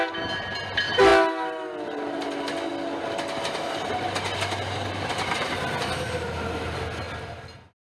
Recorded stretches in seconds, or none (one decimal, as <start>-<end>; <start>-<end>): 0.0-7.8